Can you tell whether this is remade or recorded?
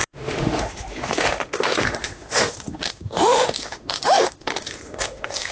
remade